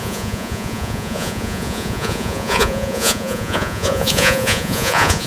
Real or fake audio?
fake